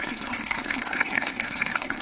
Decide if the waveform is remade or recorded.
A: remade